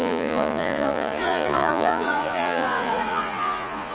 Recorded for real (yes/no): no